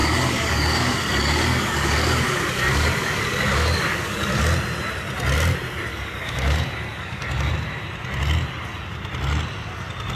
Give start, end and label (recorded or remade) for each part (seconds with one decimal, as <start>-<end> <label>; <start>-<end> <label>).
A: 0.0-4.4 remade; 4.4-5.9 recorded; 5.9-7.5 remade; 7.5-10.2 recorded